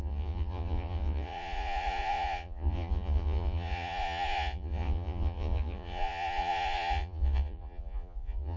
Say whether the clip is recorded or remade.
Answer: remade